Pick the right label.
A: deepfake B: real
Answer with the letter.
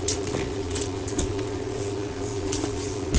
A